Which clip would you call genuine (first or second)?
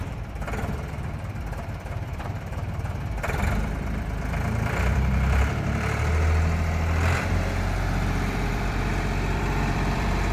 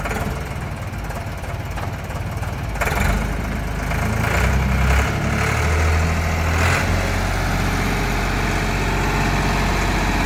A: second